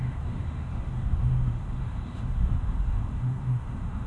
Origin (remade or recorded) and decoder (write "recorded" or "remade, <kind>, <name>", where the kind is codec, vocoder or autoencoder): remade, autoencoder, DAC-VAE